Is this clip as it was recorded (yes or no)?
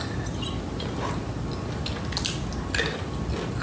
yes